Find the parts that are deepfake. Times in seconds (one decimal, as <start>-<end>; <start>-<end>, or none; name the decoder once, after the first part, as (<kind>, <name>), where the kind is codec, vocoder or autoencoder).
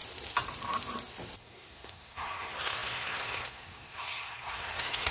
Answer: 1.4-5.1 (codec, SNAC)